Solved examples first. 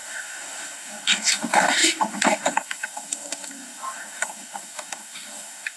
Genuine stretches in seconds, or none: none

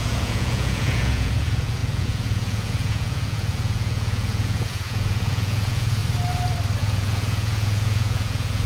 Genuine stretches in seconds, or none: 6.0-6.8

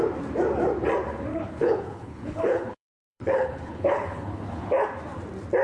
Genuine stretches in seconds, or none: 0.0-1.3; 4.7-5.6

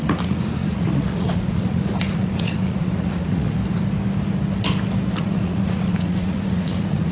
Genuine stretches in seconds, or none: 3.6-5.2